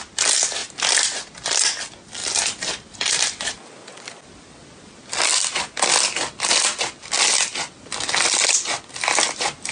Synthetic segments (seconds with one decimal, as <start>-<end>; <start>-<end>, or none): none